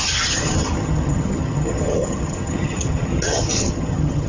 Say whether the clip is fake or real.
fake